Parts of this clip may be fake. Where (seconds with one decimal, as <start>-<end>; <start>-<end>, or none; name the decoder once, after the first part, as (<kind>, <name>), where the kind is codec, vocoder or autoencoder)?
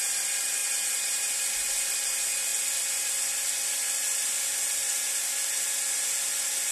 0.6-1.7 (vocoder, BigVGAN v2); 4.8-5.3